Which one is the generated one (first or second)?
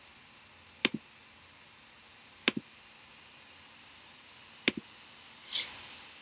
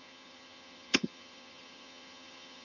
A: second